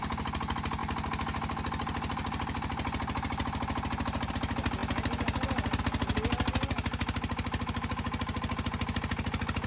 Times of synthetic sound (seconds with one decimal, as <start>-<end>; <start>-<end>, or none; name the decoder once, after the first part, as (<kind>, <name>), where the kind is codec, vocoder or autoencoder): none